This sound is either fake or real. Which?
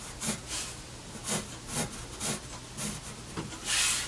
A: real